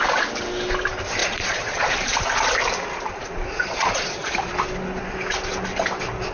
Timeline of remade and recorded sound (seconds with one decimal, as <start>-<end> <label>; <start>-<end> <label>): 0.0-1.2 recorded; 1.2-1.9 remade; 1.9-3.2 recorded; 3.2-4.5 remade; 4.5-6.3 recorded